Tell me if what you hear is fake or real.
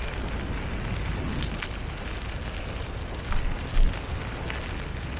real